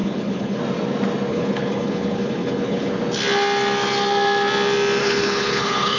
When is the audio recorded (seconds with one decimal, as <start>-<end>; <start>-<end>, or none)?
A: 0.6-1.3; 2.9-5.0